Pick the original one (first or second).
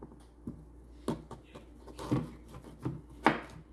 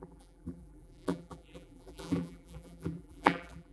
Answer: first